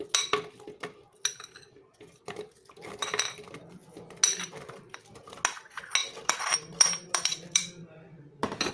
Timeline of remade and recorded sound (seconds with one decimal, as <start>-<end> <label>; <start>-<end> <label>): 0.0-6.0 recorded; 6.0-8.7 remade